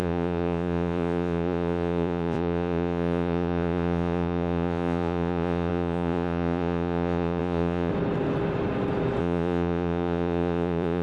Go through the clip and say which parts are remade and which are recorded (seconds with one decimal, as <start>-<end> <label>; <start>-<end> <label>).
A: 0.0-7.9 remade; 7.9-9.2 recorded; 9.2-11.0 remade